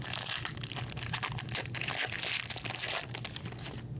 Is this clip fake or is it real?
real